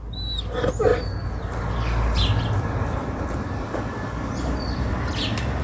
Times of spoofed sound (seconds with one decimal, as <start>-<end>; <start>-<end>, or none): none